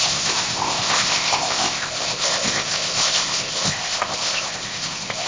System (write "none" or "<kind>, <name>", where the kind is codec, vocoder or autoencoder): codec, ZipCodec